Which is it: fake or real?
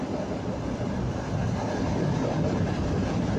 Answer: real